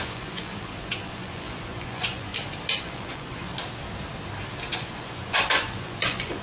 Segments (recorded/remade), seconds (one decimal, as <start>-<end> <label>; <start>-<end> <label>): 0.0-2.3 remade; 2.3-2.8 recorded; 2.8-3.5 remade; 3.5-4.7 recorded; 4.7-6.4 remade